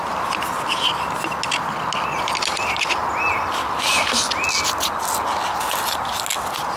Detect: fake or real real